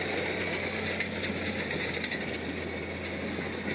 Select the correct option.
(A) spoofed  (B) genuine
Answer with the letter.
B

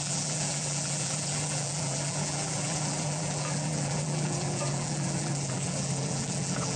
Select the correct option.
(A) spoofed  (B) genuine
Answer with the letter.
A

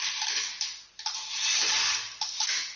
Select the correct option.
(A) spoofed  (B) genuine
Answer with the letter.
B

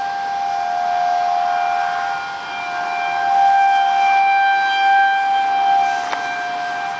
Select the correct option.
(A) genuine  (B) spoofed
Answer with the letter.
A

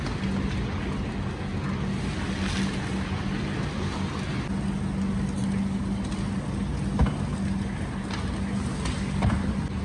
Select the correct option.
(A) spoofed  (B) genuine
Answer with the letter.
B